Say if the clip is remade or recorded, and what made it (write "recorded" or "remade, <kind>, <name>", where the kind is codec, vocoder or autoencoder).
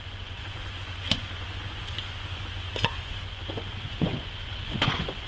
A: remade, vocoder, Vocos